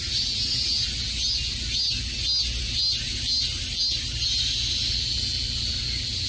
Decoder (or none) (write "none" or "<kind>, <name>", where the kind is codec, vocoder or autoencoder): none